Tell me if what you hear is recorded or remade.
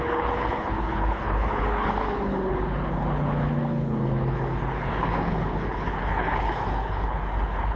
remade